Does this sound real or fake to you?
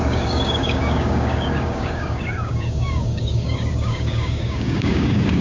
fake